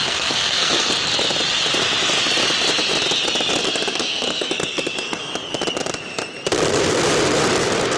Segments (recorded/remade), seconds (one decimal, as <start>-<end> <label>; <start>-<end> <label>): 0.0-1.1 remade; 1.1-3.6 recorded; 3.6-5.3 remade; 5.3-8.0 recorded